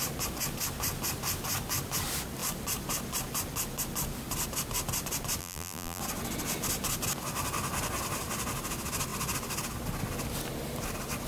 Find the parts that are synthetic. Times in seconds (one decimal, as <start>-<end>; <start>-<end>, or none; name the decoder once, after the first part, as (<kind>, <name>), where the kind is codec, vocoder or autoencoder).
5.4-6.0 (vocoder, BigVGAN v2)